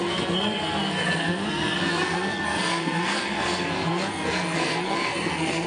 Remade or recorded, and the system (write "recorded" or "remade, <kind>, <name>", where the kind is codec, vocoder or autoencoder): remade, codec, SNAC